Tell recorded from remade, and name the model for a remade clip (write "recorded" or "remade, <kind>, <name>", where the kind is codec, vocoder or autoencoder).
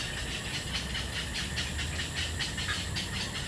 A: recorded